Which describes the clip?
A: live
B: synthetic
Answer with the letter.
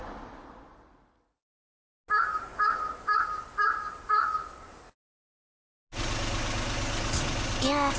A